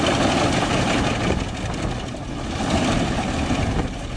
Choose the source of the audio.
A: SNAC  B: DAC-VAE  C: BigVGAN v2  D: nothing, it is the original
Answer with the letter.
D